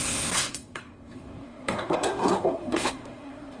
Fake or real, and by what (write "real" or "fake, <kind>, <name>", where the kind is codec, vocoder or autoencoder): fake, codec, SNAC